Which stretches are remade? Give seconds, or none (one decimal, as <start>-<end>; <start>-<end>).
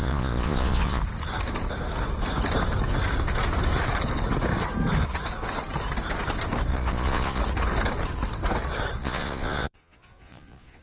0.0-1.0; 6.7-7.4; 9.0-10.8